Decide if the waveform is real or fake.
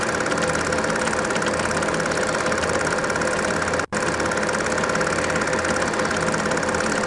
real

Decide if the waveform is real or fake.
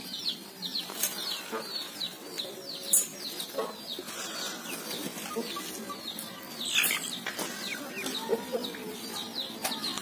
real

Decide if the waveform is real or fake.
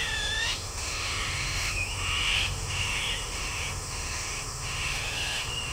fake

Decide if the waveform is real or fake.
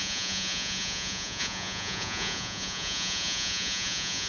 fake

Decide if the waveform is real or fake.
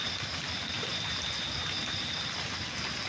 real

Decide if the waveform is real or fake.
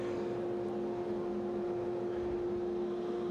real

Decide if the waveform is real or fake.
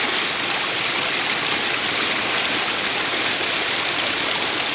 real